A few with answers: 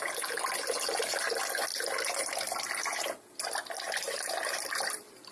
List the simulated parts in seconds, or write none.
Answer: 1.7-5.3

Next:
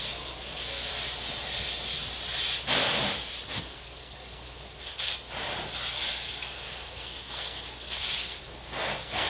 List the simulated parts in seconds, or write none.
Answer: 0.0-0.9; 3.6-5.1; 5.9-9.3

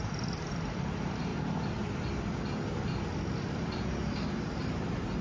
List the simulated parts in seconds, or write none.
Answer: 0.0-1.3; 3.6-5.2

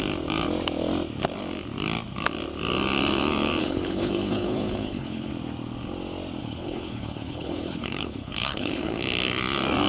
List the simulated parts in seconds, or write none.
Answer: 3.6-5.3; 6.4-9.0

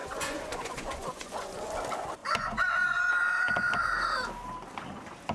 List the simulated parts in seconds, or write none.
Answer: 0.0-1.6; 2.2-3.9

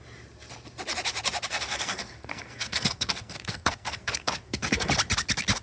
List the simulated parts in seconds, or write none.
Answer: 1.5-4.9

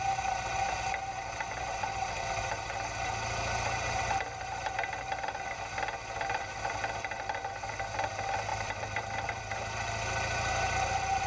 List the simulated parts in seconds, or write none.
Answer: none